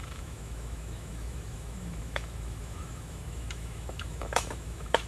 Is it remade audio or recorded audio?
remade